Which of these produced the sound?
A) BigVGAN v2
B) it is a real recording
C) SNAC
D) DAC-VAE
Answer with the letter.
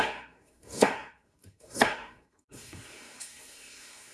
C